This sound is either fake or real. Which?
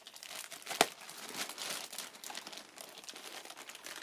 real